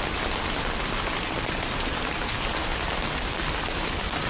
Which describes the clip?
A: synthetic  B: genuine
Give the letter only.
B